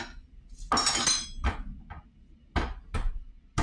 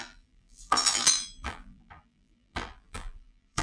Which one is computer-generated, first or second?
second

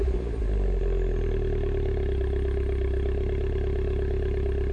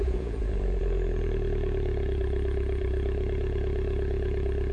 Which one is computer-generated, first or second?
second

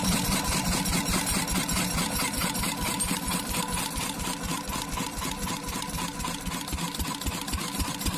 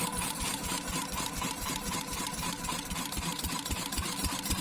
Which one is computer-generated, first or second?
second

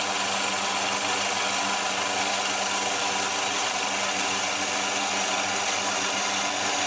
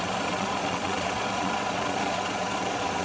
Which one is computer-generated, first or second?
second